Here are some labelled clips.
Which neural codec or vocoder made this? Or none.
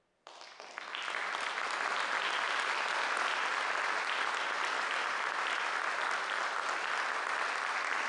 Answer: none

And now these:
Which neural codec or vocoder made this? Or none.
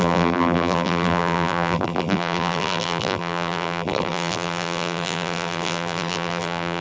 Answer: vocoder, BigVGAN v2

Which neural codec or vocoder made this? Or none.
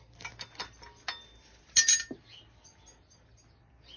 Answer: none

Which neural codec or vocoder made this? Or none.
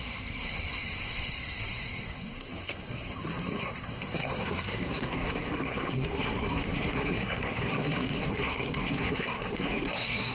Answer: codec, SNAC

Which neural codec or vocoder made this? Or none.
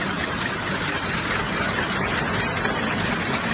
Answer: none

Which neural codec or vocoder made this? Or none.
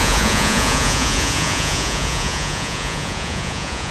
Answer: vocoder, Vocos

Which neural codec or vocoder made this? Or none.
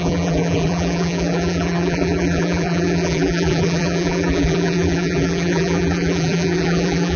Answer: vocoder, BigVGAN v2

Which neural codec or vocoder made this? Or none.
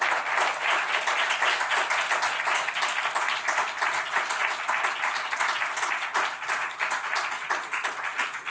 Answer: none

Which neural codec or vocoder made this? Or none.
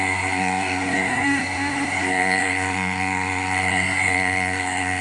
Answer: codec, SNAC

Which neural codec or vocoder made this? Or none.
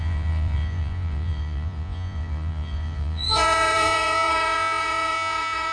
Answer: vocoder, Vocos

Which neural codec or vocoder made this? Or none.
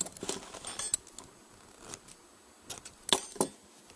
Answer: none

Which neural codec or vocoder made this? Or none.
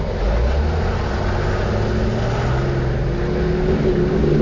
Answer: none